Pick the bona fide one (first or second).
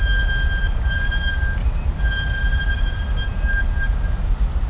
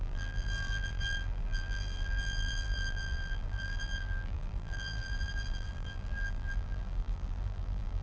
first